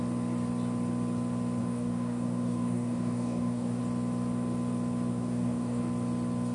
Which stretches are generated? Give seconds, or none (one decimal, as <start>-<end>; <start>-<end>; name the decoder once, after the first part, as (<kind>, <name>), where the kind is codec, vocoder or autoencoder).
1.6-3.8 (codec, DAC); 5.1-5.8